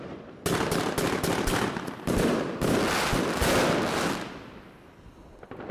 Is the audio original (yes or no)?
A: yes